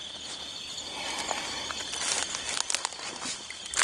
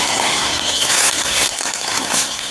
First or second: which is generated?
second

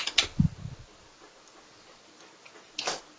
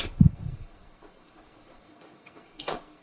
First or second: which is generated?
second